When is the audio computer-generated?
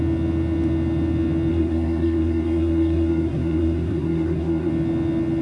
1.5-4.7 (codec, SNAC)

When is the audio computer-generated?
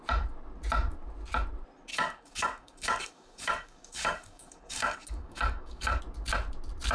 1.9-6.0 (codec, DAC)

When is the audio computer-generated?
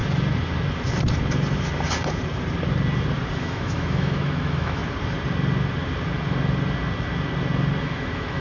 3.3-4.8 (autoencoder, DAC-VAE); 7.8-8.4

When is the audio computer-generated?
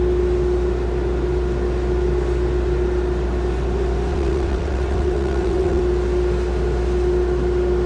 4.1-5.8 (vocoder, WaveNeXt)